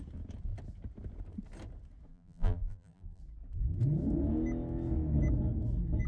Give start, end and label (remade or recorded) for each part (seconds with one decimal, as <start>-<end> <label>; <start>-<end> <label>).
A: 0.0-2.1 recorded; 2.1-3.2 remade; 3.2-6.1 recorded